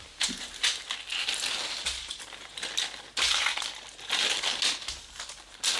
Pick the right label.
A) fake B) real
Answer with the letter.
B